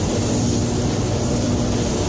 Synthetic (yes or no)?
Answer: yes